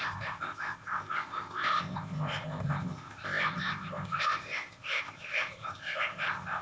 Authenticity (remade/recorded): remade